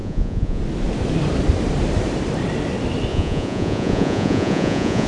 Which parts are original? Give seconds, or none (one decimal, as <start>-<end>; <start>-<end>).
0.6-3.1